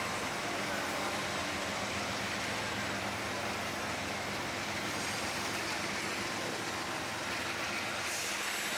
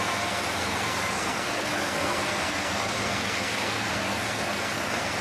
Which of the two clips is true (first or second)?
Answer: first